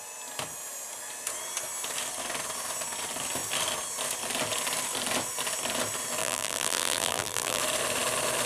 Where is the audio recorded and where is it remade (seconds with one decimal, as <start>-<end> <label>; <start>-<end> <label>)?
0.0-6.2 recorded; 6.2-7.6 remade; 7.6-8.5 recorded